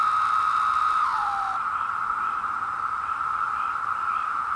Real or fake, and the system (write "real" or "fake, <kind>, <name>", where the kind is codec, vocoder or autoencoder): real